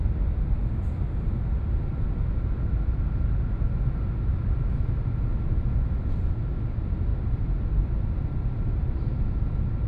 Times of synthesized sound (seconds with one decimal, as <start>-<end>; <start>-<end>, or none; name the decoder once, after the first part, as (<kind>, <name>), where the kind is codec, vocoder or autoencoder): none